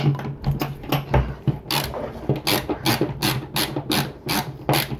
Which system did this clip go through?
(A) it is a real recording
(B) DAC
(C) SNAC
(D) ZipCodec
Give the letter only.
A